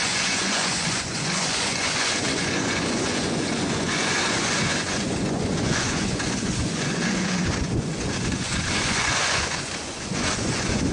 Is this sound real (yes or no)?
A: no